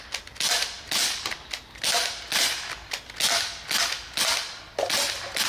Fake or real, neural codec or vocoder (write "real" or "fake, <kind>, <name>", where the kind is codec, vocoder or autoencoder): real